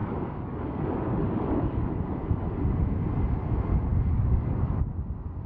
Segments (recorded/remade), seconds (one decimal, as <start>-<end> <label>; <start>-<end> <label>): 0.0-1.9 remade; 1.9-3.9 recorded; 3.9-4.6 remade; 4.6-5.5 recorded